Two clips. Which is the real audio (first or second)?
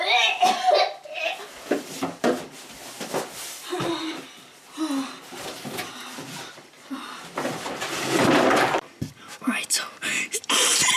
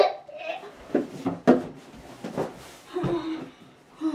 second